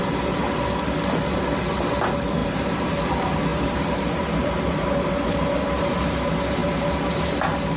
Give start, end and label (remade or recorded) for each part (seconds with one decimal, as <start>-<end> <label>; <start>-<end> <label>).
0.0-2.4 recorded; 2.4-2.9 remade; 2.9-3.5 recorded; 3.5-5.4 remade; 5.4-6.6 recorded; 6.6-7.3 remade; 7.3-7.8 recorded